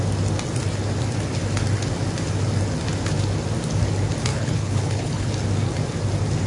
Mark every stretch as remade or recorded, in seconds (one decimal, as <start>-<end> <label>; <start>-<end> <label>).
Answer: 0.0-4.3 recorded; 4.3-5.3 remade; 5.3-6.5 recorded